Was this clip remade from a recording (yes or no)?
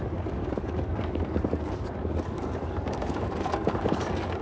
yes